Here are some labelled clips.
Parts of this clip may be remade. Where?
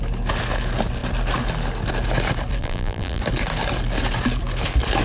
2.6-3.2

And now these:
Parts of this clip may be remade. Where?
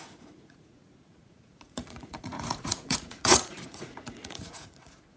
0.0-5.2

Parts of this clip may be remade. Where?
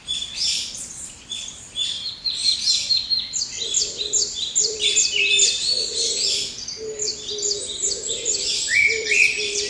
0.0-2.4; 3.8-7.1; 8.1-9.7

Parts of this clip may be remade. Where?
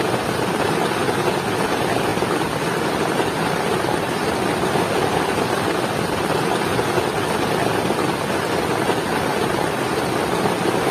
none